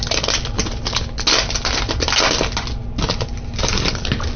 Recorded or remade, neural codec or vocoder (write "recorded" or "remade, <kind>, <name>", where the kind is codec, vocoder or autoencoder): recorded